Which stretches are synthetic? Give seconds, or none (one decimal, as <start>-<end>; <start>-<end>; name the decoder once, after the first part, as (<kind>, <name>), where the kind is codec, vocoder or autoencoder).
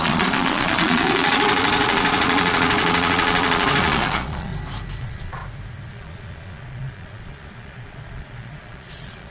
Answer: 0.0-4.5 (vocoder, Vocos); 5.0-5.4; 5.9-9.3